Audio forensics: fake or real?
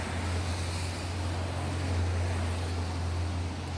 real